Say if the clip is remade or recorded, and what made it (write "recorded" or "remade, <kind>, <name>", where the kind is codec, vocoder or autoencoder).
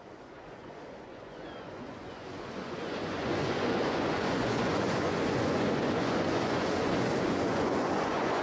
remade, vocoder, Vocos